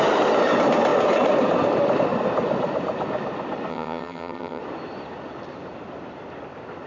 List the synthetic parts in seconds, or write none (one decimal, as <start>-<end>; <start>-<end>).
3.7-4.6